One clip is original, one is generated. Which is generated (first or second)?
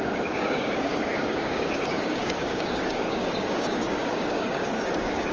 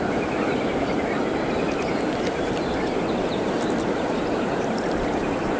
first